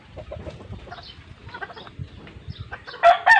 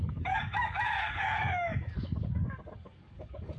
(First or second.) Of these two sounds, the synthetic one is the second